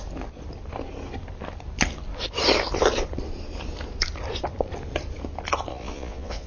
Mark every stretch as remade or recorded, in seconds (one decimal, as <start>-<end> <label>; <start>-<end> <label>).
0.0-5.7 recorded; 5.7-6.5 remade